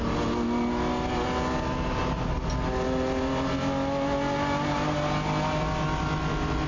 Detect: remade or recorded recorded